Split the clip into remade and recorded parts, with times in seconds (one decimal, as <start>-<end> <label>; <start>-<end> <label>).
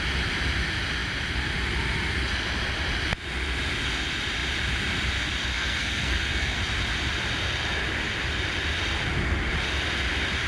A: 0.0-5.5 recorded; 5.5-6.6 remade; 6.6-10.5 recorded